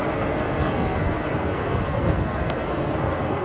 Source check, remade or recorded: remade